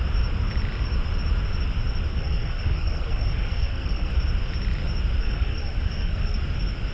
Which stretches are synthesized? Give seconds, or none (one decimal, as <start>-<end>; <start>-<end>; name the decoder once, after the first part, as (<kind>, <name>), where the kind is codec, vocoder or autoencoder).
2.1-4.1 (codec, SNAC); 5.2-6.4